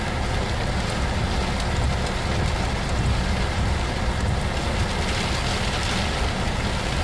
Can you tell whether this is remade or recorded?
recorded